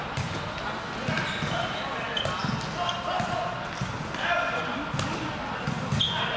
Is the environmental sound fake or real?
real